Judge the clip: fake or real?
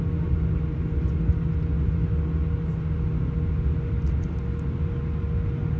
real